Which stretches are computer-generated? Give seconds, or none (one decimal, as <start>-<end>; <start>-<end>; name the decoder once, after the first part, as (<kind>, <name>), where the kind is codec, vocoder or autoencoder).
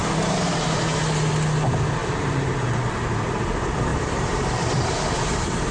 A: 2.0-2.9 (vocoder, BigVGAN v2); 3.9-5.7